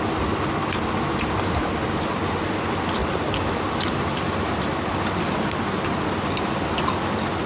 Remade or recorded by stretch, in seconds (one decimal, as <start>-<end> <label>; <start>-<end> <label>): 0.0-7.5 recorded